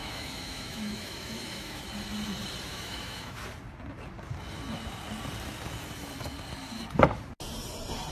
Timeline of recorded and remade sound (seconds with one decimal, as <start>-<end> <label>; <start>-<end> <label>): 0.0-1.8 remade; 1.8-2.7 recorded; 2.7-3.4 remade; 3.4-8.1 recorded